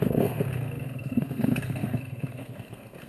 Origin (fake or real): fake